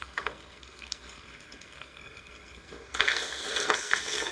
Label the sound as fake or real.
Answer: fake